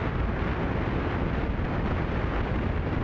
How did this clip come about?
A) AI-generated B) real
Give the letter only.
B